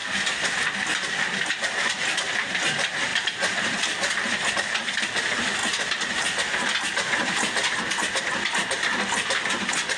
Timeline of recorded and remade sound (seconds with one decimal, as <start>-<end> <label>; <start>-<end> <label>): 0.0-10.0 recorded